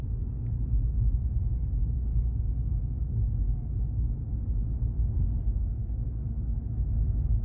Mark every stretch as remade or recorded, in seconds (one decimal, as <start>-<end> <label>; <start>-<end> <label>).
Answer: 0.0-5.8 recorded; 5.8-6.6 remade; 6.6-7.4 recorded